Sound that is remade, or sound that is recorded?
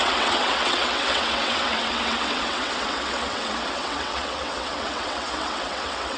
remade